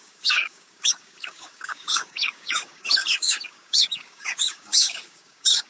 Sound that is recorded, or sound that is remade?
remade